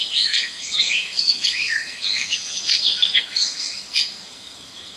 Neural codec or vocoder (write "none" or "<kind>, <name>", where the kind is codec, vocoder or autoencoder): codec, SNAC